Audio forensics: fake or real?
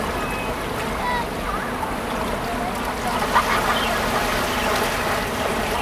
real